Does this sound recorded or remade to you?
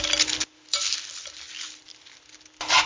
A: recorded